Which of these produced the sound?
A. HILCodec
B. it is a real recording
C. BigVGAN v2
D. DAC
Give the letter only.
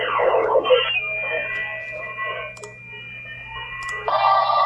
B